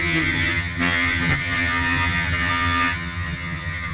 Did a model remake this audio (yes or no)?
yes